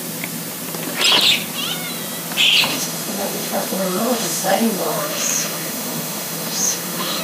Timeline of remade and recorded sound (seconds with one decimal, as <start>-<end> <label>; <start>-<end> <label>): 0.0-2.7 recorded; 2.7-7.2 remade